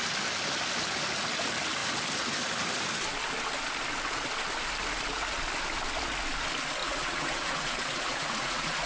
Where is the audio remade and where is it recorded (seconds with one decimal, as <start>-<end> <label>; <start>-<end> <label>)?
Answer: 0.0-6.8 recorded; 6.8-8.9 remade

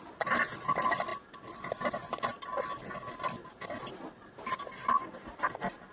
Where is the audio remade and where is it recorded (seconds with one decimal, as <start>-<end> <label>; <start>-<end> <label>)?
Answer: 0.0-5.9 recorded